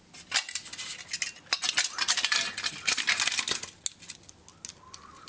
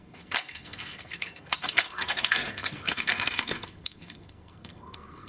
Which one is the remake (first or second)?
second